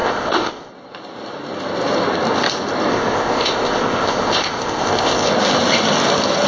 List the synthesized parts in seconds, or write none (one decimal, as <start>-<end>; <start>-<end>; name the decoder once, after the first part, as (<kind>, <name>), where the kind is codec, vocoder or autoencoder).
0.0-0.7 (codec, ZipCodec); 2.9-5.3